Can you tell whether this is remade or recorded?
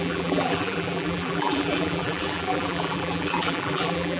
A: remade